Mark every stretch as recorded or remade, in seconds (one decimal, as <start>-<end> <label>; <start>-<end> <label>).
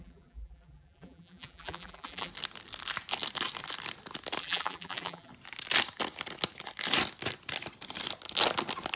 0.0-2.3 remade; 2.3-4.4 recorded; 4.4-5.3 remade; 5.3-9.0 recorded